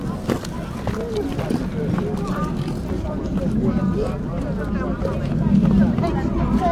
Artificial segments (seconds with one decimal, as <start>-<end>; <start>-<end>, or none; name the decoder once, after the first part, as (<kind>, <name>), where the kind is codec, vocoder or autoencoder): 2.8-3.4 (vocoder, BigVGAN v2)